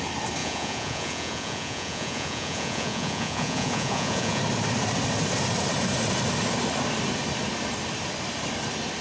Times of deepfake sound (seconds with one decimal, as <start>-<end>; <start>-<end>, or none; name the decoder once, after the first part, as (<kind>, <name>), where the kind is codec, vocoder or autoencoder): 0.4-4.4 (vocoder, Vocos)